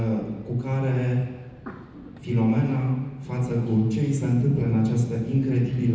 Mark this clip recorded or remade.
recorded